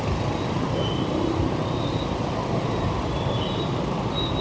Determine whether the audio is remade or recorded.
recorded